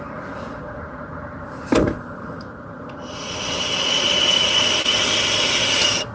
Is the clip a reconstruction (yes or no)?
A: no